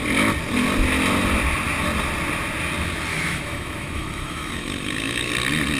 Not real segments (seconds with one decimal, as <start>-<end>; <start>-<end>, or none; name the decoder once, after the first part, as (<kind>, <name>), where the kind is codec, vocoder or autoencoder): 3.1-5.3 (autoencoder, DAC-VAE)